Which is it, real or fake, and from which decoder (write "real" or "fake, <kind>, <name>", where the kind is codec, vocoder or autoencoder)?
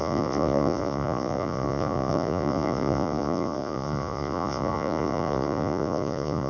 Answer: fake, vocoder, Vocos